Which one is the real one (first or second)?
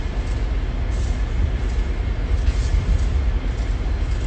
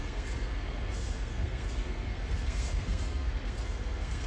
first